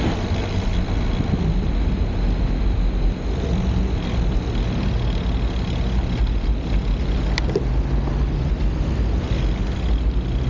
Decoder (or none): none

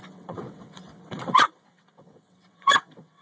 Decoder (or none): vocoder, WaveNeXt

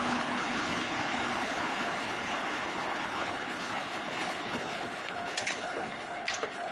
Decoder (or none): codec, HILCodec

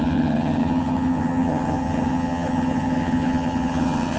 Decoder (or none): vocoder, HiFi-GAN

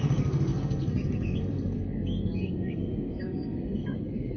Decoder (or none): codec, SNAC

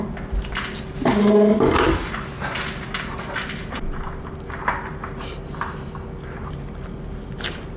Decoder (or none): none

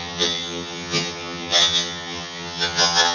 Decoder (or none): vocoder, HiFi-GAN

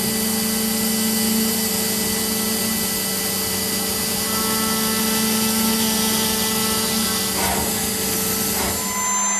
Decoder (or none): none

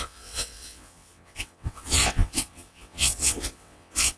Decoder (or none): vocoder, WaveNeXt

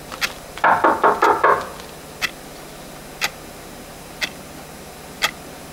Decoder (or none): none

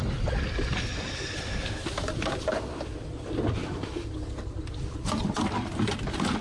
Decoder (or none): none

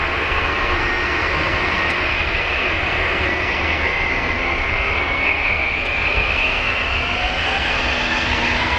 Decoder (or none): codec, SNAC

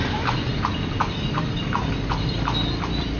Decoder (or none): none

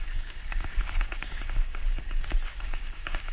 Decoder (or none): codec, DAC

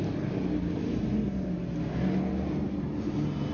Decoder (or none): none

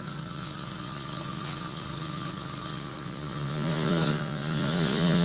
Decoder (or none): vocoder, Vocos